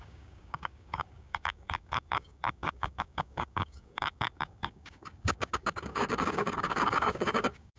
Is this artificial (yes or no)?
yes